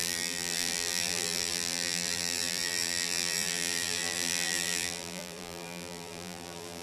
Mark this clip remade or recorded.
remade